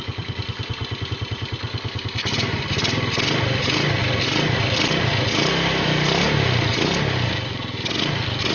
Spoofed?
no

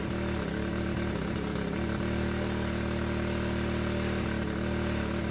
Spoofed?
no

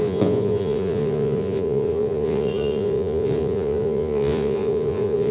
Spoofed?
yes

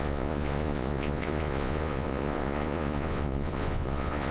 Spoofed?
yes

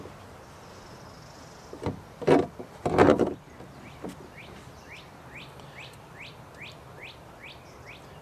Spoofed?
no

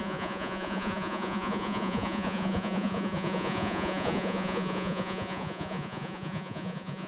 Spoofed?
yes